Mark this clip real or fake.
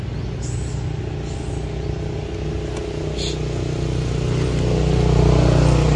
real